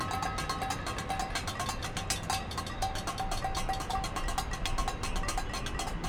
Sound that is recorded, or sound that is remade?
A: recorded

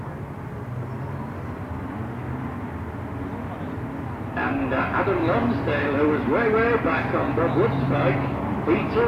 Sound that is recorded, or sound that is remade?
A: remade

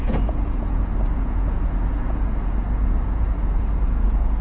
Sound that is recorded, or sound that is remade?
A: remade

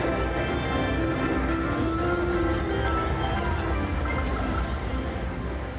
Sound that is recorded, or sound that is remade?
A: recorded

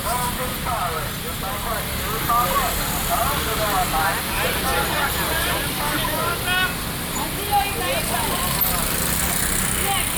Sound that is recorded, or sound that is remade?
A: recorded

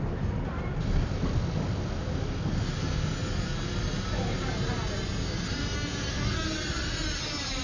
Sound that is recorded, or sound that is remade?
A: recorded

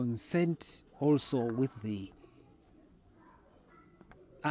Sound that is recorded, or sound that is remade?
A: remade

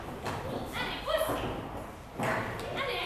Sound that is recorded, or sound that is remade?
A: recorded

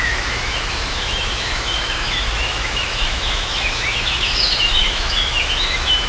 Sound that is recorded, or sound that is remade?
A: remade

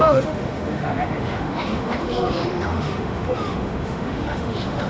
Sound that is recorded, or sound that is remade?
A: remade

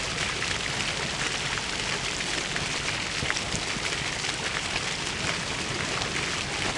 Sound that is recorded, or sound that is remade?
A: recorded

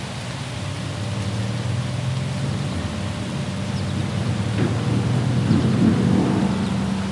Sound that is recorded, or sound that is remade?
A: recorded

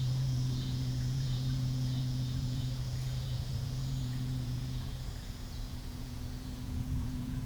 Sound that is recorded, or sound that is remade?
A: remade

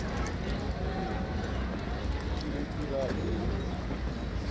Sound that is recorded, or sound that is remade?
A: recorded